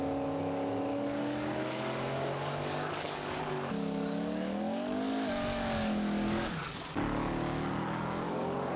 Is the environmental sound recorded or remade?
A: remade